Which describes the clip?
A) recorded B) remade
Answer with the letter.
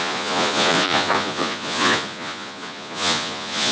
B